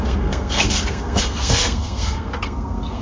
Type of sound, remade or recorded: remade